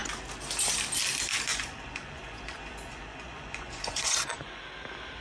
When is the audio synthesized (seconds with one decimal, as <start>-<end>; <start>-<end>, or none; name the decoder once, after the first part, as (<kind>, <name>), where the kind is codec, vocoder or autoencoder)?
1.5-4.6 (vocoder, Vocos)